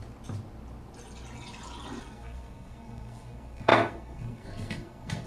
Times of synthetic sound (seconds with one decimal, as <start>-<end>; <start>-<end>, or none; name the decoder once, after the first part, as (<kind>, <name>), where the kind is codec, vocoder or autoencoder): 2.0-5.3 (codec, SNAC)